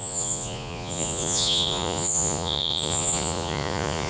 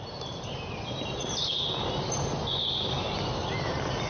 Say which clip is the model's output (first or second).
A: first